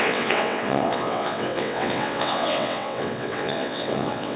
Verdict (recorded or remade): remade